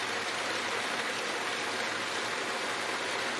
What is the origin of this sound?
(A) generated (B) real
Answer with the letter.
B